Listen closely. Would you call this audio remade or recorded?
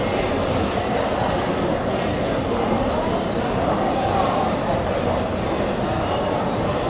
recorded